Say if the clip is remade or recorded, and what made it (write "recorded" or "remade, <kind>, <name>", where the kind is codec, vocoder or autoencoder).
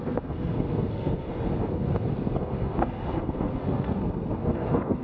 remade, codec, SNAC